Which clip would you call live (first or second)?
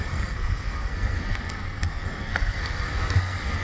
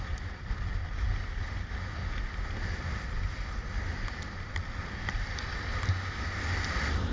second